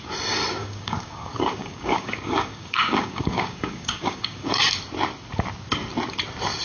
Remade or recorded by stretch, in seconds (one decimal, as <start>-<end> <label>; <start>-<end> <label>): 0.0-0.6 recorded; 0.6-4.6 remade; 4.6-6.6 recorded